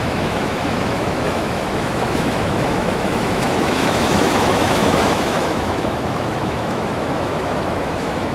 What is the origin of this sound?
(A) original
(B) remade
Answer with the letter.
B